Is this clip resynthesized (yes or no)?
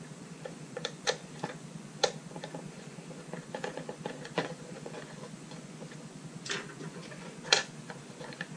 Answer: yes